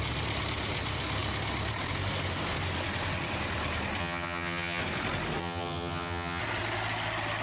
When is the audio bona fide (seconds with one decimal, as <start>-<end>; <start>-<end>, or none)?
0.0-4.0; 4.8-5.4; 6.4-7.4